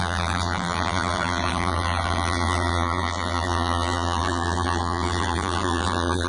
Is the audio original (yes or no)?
no